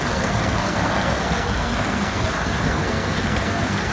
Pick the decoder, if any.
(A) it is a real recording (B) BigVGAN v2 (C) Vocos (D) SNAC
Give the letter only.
D